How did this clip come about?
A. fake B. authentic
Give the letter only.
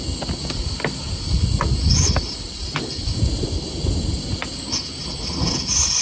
B